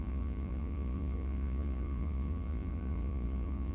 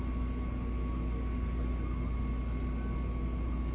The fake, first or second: first